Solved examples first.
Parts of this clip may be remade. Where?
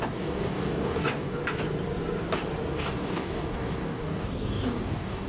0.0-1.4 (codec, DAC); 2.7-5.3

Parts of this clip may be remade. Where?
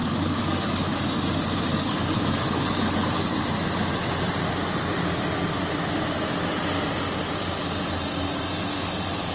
0.0-1.0 (codec, DAC); 1.7-3.2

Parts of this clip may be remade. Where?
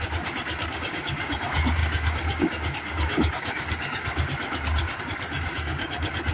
0.0-6.3 (codec, DAC)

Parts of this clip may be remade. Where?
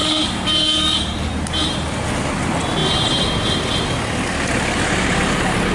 0.0-1.3 (codec, DAC)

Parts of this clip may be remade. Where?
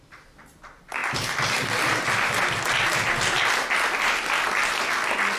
none